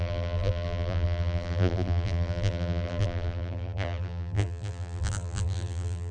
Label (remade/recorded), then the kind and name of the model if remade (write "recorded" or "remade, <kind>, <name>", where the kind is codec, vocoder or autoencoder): remade, vocoder, BigVGAN v2